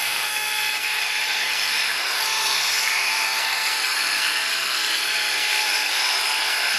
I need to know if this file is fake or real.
fake